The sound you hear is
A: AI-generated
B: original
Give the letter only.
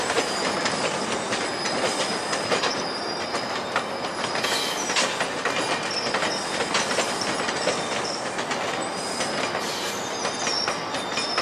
B